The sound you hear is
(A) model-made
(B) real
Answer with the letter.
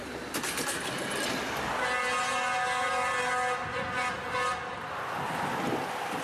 B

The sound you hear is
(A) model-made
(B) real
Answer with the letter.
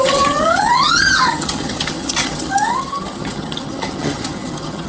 A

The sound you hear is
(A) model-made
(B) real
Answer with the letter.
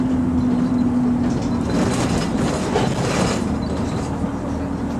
B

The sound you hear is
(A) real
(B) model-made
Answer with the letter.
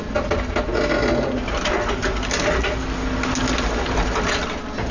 A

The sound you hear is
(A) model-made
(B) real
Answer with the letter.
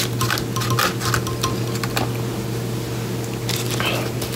B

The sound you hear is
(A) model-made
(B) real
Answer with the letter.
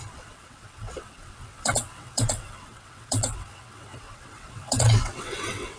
A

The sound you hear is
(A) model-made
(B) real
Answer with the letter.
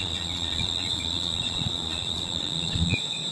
A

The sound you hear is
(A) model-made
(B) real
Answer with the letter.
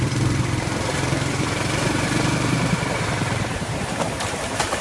A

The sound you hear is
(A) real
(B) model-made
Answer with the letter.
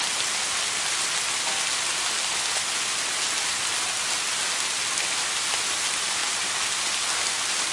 A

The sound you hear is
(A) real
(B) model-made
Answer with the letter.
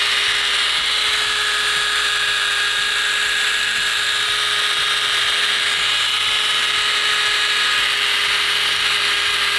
A